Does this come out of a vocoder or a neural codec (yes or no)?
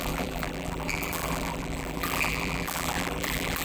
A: yes